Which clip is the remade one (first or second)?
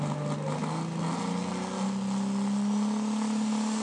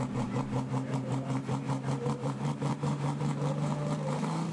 second